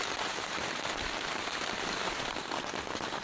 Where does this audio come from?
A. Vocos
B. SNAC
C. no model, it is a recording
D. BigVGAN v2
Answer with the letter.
D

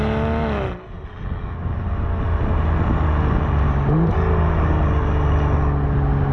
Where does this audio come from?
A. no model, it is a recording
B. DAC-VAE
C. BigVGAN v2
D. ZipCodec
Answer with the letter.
A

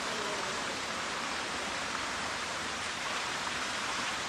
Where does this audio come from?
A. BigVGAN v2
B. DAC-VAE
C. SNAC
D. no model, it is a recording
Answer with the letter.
A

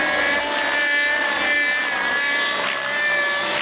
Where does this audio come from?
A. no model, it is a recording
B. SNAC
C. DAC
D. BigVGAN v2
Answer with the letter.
A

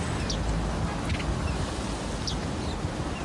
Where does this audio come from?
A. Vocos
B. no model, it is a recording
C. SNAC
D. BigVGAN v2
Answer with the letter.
B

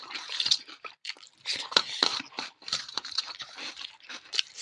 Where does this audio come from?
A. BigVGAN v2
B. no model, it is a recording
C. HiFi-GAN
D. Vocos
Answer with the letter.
A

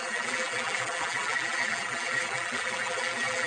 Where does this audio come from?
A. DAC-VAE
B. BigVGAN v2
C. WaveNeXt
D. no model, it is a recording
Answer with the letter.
B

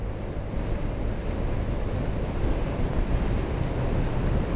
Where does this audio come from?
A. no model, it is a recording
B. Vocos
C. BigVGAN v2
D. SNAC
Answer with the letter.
A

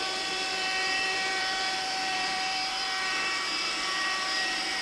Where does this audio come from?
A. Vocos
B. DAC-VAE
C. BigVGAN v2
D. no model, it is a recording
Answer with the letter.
C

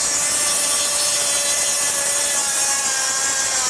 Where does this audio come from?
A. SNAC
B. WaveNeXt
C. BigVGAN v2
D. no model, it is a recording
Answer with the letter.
D